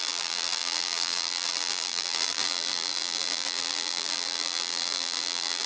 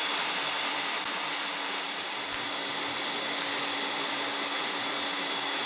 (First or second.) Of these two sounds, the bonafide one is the second